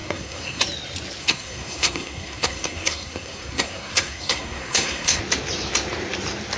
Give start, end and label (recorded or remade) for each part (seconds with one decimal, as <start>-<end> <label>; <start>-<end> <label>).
0.0-0.6 remade; 0.6-1.2 recorded; 1.2-5.2 remade; 5.2-6.6 recorded